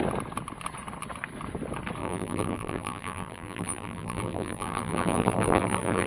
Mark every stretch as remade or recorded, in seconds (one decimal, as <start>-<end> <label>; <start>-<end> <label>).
0.0-2.0 recorded; 2.0-6.1 remade